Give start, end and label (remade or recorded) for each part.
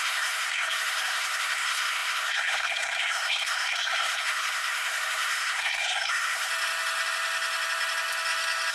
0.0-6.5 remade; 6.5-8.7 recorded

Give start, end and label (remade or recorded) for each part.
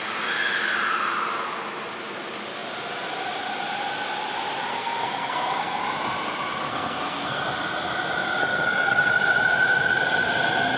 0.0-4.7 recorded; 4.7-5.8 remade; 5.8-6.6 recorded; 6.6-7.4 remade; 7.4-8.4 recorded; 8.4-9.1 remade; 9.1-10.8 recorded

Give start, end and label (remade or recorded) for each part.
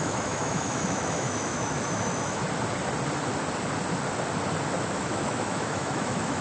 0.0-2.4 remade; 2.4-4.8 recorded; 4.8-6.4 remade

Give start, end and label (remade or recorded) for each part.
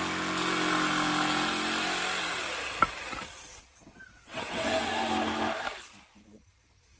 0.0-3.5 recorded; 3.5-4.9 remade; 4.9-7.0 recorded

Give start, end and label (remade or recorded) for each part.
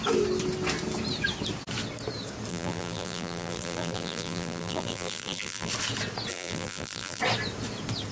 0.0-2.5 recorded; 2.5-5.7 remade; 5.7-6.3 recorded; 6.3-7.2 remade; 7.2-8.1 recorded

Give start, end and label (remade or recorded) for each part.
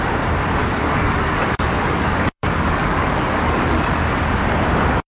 0.0-0.6 recorded; 0.6-3.7 remade; 3.7-5.2 recorded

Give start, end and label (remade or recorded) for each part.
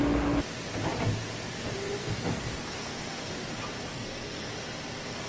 0.0-2.0 recorded; 2.0-3.3 remade; 3.3-3.9 recorded; 3.9-4.5 remade; 4.5-5.3 recorded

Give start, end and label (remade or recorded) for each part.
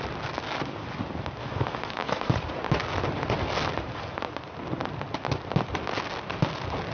0.0-1.4 recorded; 1.4-2.3 remade; 2.3-6.9 recorded